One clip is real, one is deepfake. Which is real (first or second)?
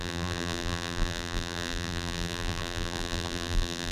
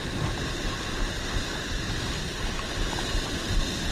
second